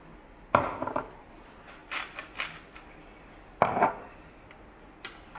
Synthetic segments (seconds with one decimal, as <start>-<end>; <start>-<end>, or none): none